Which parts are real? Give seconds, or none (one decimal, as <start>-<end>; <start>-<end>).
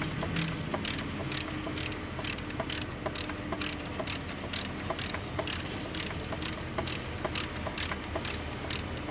0.0-9.1